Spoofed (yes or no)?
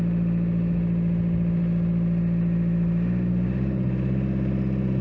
no